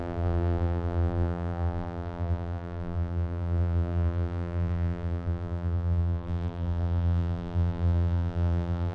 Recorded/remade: remade